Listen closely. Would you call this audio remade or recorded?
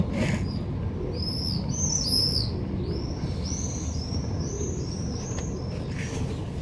recorded